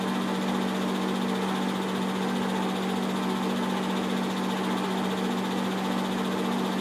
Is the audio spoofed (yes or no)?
no